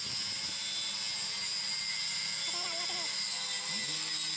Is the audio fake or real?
real